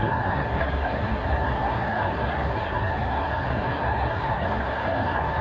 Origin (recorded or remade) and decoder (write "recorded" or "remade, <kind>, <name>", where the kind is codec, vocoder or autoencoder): remade, codec, SNAC